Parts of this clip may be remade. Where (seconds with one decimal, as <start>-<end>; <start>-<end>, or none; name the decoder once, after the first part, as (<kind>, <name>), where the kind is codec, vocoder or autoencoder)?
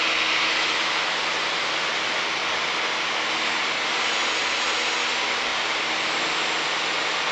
5.5-6.2 (vocoder, BigVGAN v2)